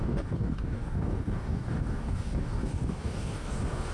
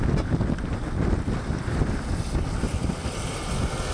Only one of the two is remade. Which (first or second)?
first